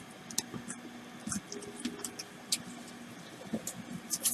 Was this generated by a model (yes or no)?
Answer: no